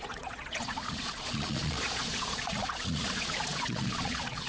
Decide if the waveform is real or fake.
fake